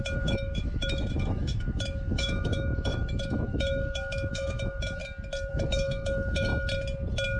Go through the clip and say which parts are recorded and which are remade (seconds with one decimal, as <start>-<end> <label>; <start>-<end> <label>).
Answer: 0.0-5.0 remade; 5.0-5.5 recorded; 5.5-6.5 remade; 6.5-7.4 recorded